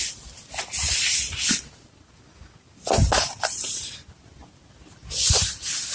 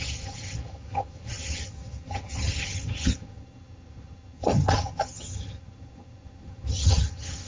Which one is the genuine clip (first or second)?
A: first